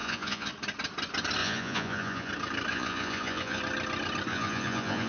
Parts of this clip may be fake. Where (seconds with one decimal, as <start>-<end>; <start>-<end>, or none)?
0.0-0.5; 1.4-2.3; 2.7-3.6; 4.3-5.1